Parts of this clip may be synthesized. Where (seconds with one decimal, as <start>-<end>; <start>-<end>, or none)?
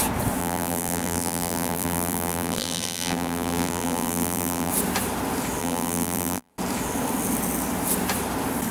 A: 0.4-4.7; 5.6-6.5